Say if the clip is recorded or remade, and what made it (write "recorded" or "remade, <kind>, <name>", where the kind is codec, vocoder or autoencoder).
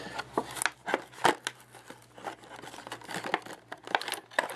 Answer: recorded